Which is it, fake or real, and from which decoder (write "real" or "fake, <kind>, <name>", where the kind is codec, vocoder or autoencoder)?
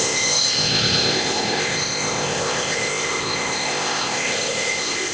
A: fake, codec, ZipCodec